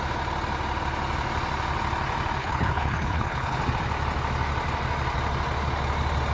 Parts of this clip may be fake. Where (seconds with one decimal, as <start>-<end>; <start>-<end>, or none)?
2.4-3.6